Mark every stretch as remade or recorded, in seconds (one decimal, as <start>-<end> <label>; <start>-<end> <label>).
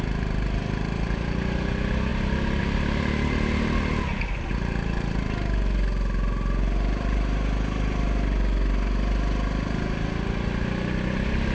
0.0-11.5 recorded